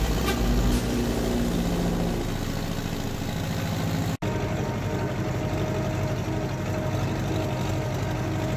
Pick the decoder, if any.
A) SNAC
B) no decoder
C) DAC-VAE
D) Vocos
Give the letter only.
B